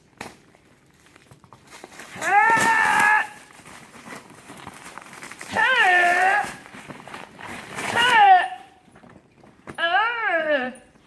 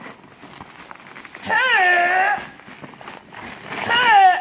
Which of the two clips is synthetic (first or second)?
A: first